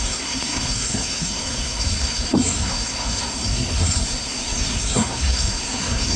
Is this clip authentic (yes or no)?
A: no